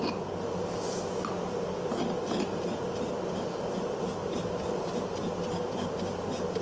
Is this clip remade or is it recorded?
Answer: recorded